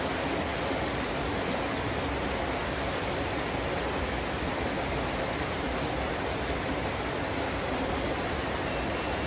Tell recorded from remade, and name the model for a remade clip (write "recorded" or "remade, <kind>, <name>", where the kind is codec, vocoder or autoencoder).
recorded